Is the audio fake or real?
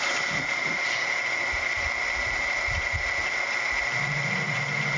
real